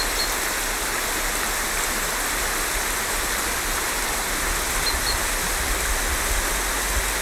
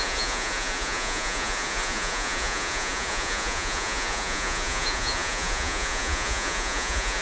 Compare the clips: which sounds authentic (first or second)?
first